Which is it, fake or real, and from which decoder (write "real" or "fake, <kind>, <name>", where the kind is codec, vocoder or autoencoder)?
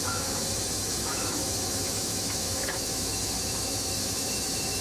fake, autoencoder, DAC-VAE